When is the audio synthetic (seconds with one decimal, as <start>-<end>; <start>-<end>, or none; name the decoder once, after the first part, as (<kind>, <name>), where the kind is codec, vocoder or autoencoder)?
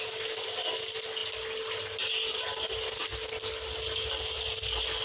none